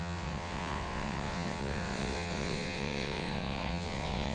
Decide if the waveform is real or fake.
fake